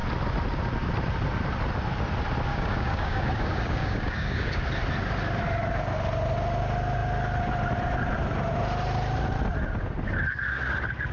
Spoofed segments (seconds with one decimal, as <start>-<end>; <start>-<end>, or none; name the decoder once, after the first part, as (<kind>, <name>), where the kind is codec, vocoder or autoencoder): 2.5-4.6 (codec, DAC)